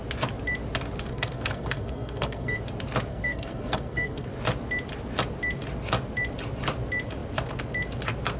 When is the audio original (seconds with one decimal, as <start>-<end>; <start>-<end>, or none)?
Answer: 0.0-1.1; 2.6-3.1; 4.3-8.4